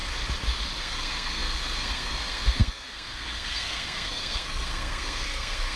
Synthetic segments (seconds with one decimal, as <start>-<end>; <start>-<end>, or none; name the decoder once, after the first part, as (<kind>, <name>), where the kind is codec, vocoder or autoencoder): 0.8-5.8 (codec, SNAC)